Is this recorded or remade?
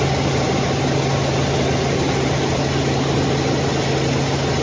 recorded